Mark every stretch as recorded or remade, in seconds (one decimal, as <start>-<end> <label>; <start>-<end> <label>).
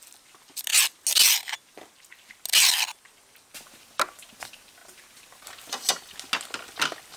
0.0-7.2 recorded